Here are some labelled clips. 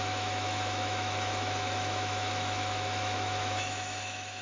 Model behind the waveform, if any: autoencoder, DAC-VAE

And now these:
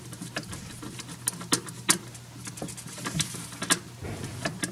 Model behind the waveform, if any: none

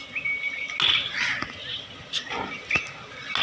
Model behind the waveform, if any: none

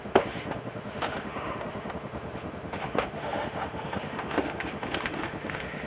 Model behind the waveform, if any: autoencoder, DAC-VAE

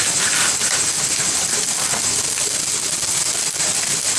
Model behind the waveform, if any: none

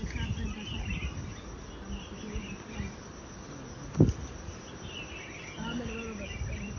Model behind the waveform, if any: none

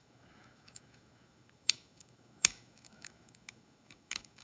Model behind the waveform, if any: autoencoder, DAC-VAE